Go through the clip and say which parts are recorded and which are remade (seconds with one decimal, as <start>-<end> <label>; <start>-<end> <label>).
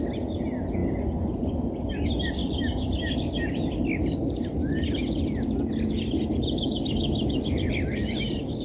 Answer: 0.0-0.8 recorded; 0.8-1.9 remade; 1.9-2.4 recorded; 2.4-3.1 remade; 3.1-8.6 recorded